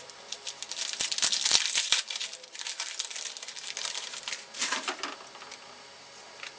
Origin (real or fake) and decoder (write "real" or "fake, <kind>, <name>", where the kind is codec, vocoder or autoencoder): real